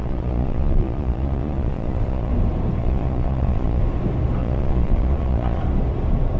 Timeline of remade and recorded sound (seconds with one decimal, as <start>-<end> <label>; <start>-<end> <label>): 0.0-2.3 remade; 2.3-2.8 recorded; 2.8-3.8 remade; 3.8-4.4 recorded; 4.4-5.6 remade; 5.6-6.4 recorded